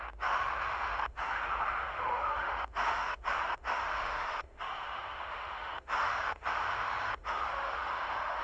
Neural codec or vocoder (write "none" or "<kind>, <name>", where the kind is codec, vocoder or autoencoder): autoencoder, DAC-VAE